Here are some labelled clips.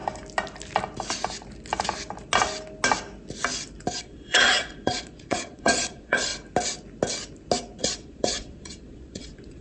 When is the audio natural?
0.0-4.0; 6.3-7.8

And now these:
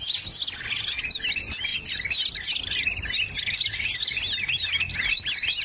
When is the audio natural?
0.0-5.6

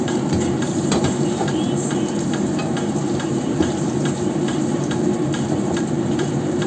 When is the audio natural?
none

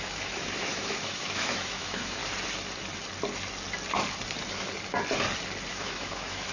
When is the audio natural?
2.2-5.7

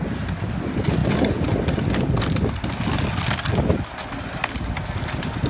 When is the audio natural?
0.0-5.5